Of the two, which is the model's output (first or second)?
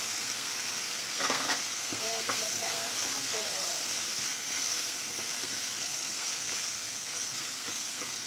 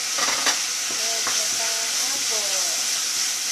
first